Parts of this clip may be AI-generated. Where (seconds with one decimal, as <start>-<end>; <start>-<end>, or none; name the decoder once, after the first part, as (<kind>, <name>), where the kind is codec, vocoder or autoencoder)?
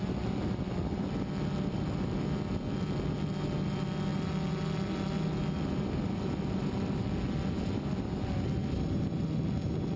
none